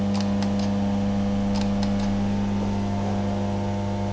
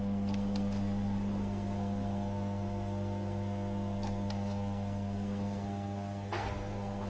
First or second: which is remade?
second